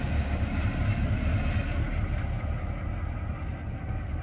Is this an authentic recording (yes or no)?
yes